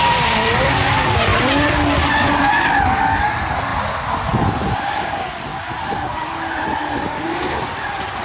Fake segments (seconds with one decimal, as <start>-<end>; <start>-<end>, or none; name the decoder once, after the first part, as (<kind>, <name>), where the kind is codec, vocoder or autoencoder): 0.0-3.7 (vocoder, BigVGAN v2); 4.4-5.5; 6.1-8.2